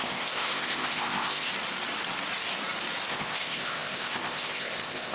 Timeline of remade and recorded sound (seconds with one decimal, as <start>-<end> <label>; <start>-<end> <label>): 0.0-1.5 remade; 1.5-3.1 recorded; 3.1-5.1 remade